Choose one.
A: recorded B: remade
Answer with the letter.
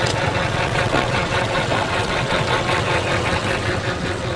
B